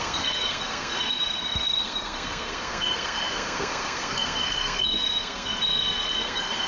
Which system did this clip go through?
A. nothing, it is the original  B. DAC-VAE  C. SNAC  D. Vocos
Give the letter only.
C